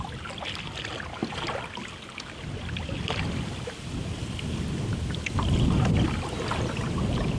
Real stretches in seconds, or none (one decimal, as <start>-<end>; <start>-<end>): 0.0-7.4